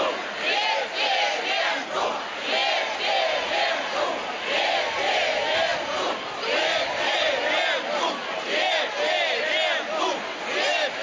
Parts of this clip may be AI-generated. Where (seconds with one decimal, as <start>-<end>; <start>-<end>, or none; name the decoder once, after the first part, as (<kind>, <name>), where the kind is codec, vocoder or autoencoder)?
none

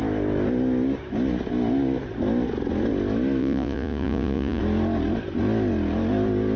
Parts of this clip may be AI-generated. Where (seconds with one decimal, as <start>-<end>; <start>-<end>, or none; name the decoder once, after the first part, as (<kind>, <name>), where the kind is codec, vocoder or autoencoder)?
3.4-4.6 (vocoder, Vocos)

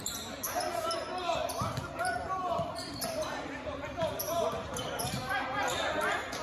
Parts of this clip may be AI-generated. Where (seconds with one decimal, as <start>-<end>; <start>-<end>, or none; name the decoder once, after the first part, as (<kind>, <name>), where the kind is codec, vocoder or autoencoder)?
none

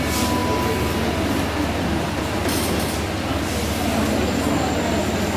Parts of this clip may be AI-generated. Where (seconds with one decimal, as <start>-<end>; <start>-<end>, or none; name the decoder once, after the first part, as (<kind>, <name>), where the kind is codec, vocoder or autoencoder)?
none

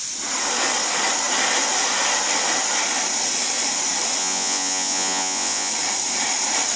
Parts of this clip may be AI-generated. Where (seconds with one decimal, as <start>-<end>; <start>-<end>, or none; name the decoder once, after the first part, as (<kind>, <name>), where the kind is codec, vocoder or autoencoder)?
4.2-5.7 (vocoder, Vocos)

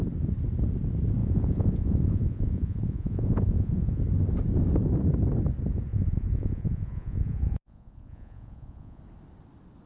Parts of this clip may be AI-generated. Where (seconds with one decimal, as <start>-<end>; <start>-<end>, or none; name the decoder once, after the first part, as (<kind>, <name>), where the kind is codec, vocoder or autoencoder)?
1.2-4.0 (vocoder, Vocos); 5.9-9.0